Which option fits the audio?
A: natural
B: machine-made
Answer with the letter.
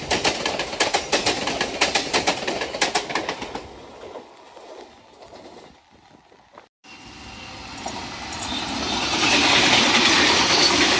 A